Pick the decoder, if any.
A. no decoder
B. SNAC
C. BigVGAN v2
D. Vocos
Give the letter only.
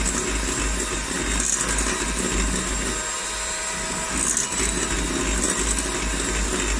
A